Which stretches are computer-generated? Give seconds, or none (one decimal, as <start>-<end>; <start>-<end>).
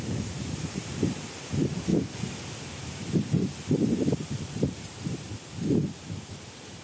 0.0-1.9; 2.7-5.3; 6.3-6.8